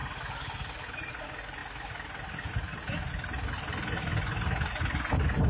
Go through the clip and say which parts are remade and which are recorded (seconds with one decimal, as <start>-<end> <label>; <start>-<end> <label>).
0.0-5.5 recorded